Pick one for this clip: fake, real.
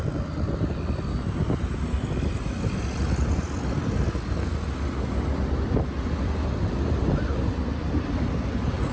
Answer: real